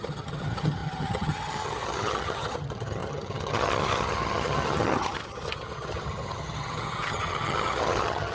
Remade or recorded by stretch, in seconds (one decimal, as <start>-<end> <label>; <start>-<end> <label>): 0.0-8.3 remade